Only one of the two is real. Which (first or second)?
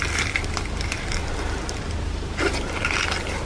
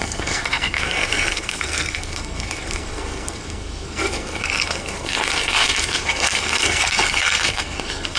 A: first